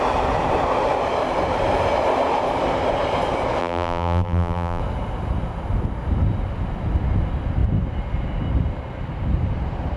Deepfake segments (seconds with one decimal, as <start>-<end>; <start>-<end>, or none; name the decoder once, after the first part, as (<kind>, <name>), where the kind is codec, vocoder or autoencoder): 3.6-4.8 (vocoder, BigVGAN v2)